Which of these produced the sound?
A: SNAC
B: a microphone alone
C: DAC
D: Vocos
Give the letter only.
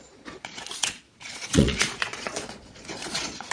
D